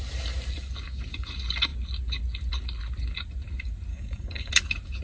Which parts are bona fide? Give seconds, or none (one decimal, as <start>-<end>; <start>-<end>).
0.0-3.9; 4.5-5.0